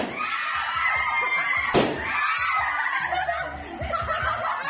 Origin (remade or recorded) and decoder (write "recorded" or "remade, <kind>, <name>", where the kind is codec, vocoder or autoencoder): recorded